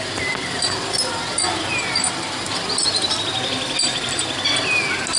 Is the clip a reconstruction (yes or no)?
no